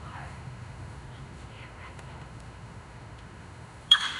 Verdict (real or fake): fake